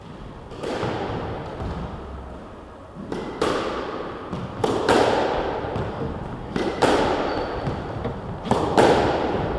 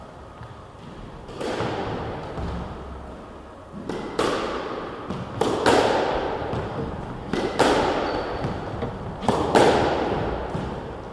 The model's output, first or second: first